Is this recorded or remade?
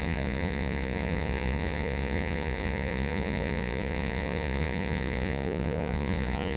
remade